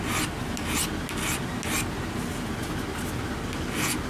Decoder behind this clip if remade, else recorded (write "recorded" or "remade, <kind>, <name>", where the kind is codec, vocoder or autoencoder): recorded